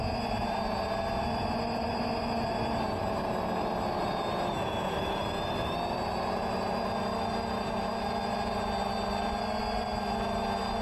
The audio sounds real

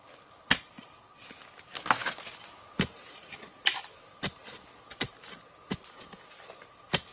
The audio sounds real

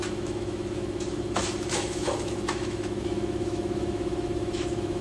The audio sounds fake